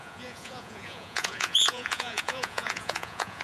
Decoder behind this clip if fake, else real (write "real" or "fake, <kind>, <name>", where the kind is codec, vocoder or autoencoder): fake, vocoder, Vocos